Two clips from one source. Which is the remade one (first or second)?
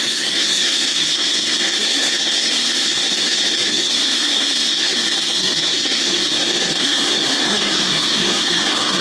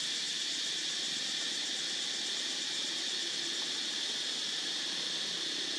first